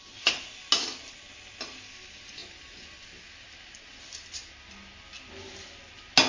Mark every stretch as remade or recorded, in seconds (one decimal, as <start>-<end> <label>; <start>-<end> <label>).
0.0-6.3 recorded